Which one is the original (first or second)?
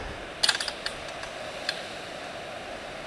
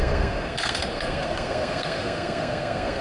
first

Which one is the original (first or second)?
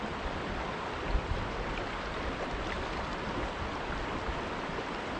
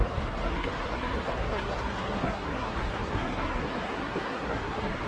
first